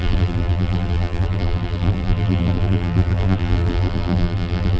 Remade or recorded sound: remade